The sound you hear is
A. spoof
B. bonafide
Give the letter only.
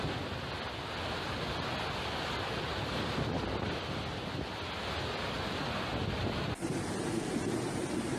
B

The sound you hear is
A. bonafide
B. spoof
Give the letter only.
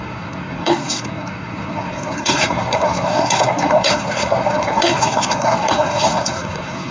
B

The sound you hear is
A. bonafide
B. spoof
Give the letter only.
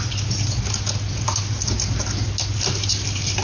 A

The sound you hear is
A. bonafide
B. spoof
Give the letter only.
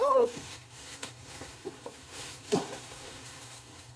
B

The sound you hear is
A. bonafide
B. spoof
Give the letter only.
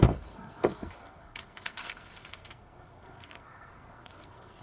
B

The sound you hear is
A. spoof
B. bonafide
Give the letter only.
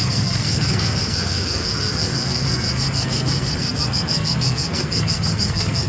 A